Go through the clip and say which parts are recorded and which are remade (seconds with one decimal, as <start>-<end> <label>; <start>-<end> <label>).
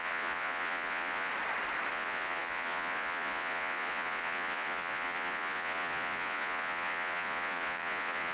0.0-1.3 remade; 1.3-1.9 recorded; 1.9-8.3 remade